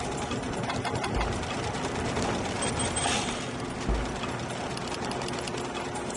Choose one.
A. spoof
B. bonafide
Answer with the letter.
B